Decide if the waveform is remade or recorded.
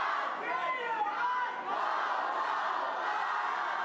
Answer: recorded